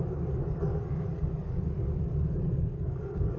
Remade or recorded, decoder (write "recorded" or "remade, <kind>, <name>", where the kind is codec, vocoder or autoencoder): remade, codec, DAC